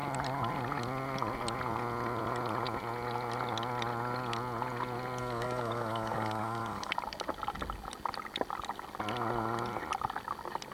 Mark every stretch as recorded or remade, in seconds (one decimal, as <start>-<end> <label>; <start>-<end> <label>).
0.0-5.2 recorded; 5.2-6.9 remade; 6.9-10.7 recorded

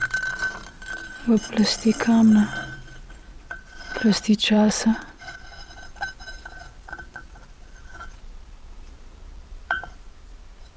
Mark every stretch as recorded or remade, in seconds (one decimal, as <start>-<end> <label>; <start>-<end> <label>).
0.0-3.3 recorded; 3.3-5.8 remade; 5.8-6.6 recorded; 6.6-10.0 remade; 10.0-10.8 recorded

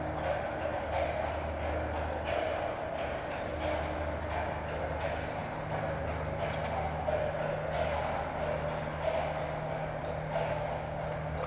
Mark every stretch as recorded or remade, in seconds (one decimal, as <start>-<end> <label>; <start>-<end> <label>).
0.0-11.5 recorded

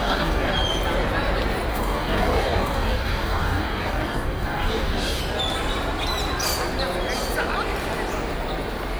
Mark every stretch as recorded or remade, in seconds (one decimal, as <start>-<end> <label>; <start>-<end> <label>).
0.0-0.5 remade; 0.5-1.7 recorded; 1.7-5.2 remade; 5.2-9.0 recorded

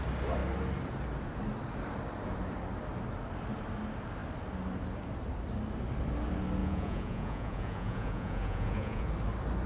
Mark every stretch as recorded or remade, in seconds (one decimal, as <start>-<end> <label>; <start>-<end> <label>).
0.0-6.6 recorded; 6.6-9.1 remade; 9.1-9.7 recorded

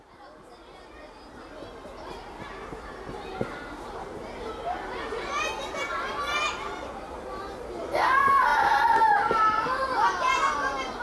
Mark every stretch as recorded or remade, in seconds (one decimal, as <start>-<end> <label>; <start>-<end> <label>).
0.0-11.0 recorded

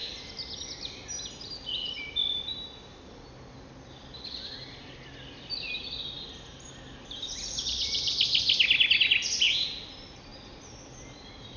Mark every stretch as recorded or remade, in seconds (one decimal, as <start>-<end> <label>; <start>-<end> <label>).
0.0-1.3 recorded; 1.3-2.5 remade; 2.5-7.7 recorded; 7.7-10.3 remade; 10.3-10.8 recorded; 10.8-11.6 remade